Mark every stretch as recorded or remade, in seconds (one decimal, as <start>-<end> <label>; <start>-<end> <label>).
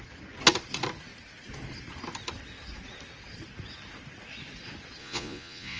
0.0-5.0 recorded; 5.0-5.8 remade